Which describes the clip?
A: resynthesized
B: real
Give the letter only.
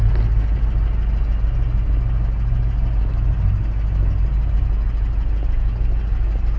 B